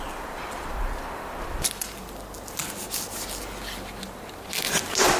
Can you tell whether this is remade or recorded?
recorded